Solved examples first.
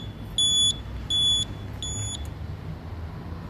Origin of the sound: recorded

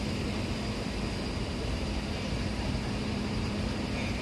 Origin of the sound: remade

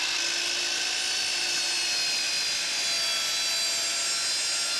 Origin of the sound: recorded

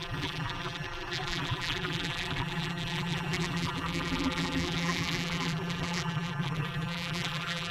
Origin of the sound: remade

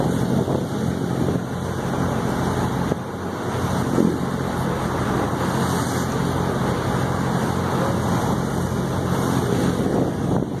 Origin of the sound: recorded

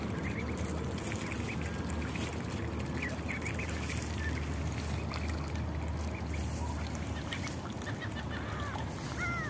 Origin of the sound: recorded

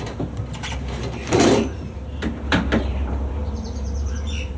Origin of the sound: remade